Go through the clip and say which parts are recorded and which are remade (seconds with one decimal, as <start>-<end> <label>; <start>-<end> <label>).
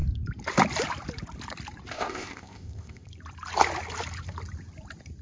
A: 0.0-1.9 recorded; 1.9-3.1 remade; 3.1-5.2 recorded